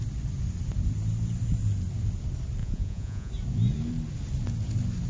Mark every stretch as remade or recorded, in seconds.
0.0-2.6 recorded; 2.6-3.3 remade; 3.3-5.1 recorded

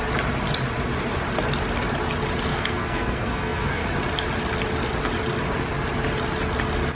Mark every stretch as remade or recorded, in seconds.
0.0-2.5 recorded; 2.5-3.8 remade; 3.8-6.9 recorded